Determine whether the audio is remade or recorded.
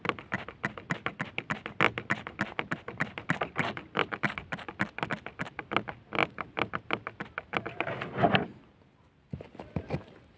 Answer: recorded